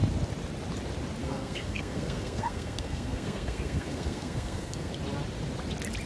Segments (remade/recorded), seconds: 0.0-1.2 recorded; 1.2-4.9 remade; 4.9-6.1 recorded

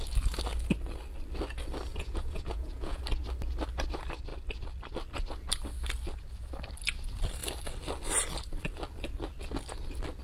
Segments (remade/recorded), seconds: 0.0-1.9 recorded; 1.9-3.0 remade; 3.0-10.2 recorded

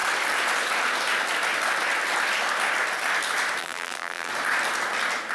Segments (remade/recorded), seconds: 0.0-3.6 recorded; 3.6-4.3 remade; 4.3-5.3 recorded

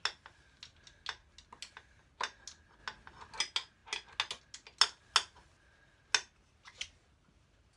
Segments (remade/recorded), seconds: 0.0-7.8 recorded

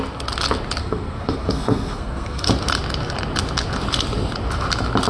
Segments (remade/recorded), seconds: 0.0-0.8 recorded; 0.8-2.5 remade; 2.5-5.1 recorded

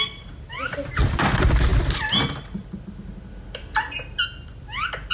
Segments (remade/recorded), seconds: 0.0-5.1 recorded